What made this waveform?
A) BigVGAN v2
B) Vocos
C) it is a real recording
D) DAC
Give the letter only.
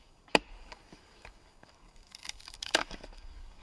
D